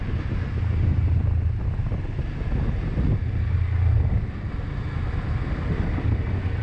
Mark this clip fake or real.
real